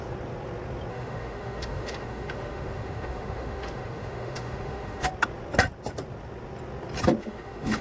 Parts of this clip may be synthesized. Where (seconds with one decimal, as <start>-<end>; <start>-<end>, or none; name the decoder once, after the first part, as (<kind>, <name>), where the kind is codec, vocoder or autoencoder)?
0.9-5.1 (autoencoder, DAC-VAE); 7.2-7.8